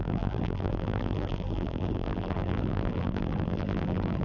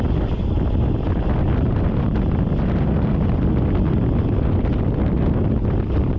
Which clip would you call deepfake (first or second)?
first